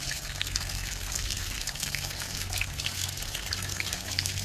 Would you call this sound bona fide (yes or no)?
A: no